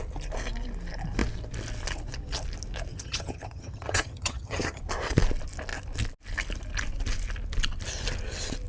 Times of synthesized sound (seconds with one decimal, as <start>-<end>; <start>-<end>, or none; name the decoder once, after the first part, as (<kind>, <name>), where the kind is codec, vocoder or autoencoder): 2.9-4.8 (vocoder, HiFi-GAN)